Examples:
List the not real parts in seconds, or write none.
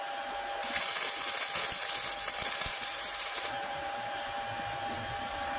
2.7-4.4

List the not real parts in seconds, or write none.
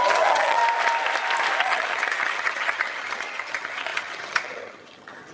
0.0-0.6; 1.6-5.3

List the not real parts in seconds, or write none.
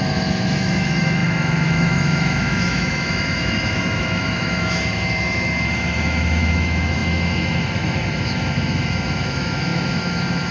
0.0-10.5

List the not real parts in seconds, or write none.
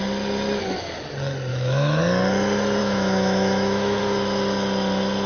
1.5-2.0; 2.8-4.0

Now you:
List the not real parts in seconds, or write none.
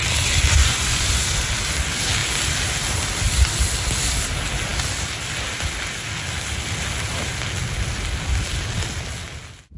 0.6-1.2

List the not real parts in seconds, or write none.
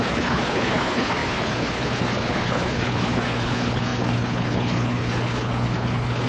0.0-6.3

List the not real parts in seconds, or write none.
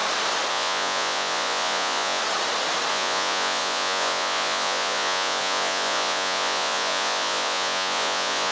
0.5-2.2; 2.9-8.5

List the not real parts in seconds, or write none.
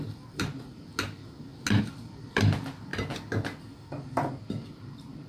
0.0-0.9; 1.8-2.9; 3.9-5.3